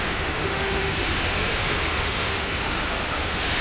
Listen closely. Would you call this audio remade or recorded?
remade